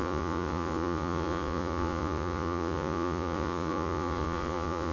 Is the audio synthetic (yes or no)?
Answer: yes